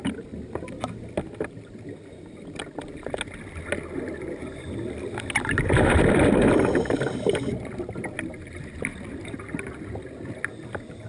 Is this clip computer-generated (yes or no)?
no